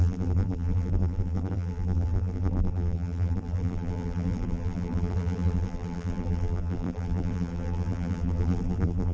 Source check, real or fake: fake